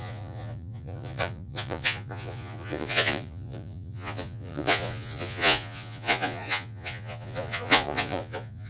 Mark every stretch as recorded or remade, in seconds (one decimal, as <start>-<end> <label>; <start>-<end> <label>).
0.0-8.7 remade